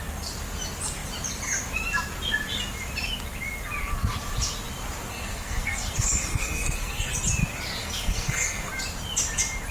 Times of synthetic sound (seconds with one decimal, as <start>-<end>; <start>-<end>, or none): 5.1-7.1; 7.8-8.7